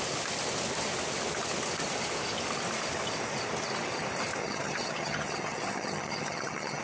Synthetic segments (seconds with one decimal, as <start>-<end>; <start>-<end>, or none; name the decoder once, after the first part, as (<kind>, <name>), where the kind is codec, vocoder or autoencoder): 4.4-6.8 (vocoder, HiFi-GAN)